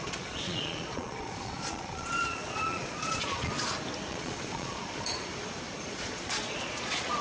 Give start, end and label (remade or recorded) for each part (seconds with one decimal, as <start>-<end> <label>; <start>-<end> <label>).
0.0-3.5 remade; 3.5-4.1 recorded; 4.1-5.3 remade; 5.3-5.9 recorded; 5.9-7.2 remade